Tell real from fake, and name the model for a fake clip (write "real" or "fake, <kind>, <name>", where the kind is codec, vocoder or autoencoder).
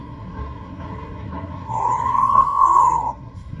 fake, codec, SNAC